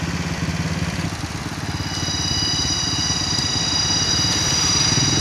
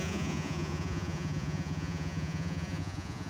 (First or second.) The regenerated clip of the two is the second